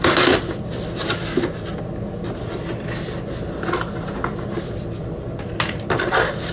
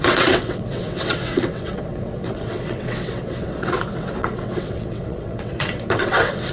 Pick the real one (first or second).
first